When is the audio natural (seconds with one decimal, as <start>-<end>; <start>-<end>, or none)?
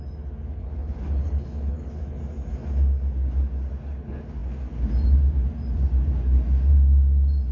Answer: 0.0-0.6; 2.0-7.5